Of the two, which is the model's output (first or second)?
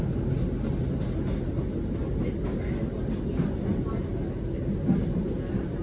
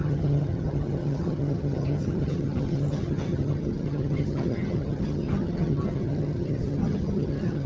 second